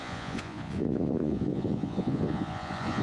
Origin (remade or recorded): remade